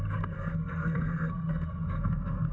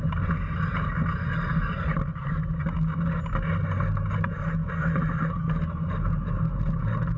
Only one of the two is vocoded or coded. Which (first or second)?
first